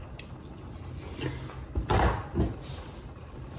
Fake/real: real